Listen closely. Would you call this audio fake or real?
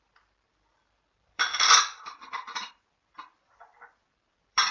fake